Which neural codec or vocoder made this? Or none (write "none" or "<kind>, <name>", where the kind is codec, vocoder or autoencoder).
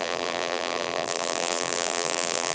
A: vocoder, BigVGAN v2